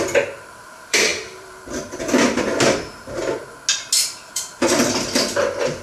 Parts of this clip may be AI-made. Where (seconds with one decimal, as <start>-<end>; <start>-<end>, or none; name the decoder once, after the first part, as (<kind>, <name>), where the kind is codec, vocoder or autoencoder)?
0.0-3.4 (vocoder, BigVGAN v2); 4.2-5.8